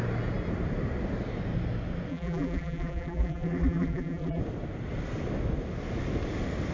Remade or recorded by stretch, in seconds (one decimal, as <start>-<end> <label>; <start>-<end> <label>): 0.0-2.1 recorded; 2.1-4.4 remade; 4.4-6.7 recorded